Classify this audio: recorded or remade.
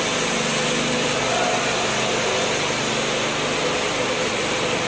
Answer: recorded